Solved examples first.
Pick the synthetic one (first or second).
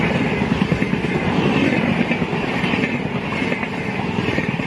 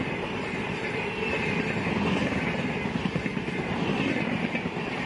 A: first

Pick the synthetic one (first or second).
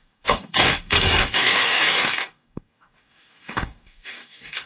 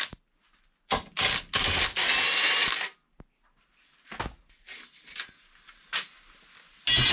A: first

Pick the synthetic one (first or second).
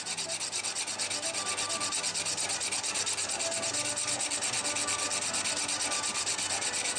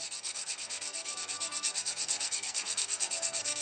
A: second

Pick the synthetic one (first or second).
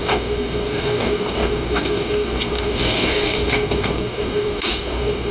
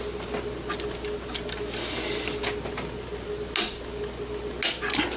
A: first